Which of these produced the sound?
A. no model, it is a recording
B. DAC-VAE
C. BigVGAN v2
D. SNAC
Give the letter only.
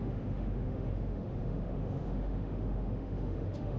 B